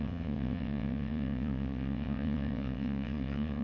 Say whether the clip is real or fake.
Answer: fake